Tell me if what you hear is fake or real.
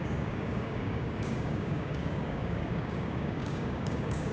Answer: fake